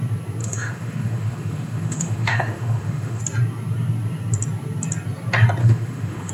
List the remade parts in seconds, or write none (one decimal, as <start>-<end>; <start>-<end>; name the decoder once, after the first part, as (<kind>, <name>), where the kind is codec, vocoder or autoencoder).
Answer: 0.4-3.2 (autoencoder, DAC-VAE); 5.6-6.3